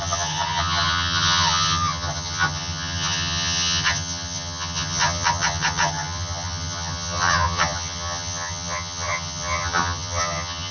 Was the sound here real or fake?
fake